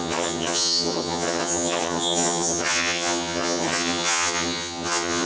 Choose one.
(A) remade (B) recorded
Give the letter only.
A